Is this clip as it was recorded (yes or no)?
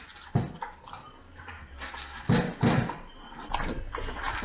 yes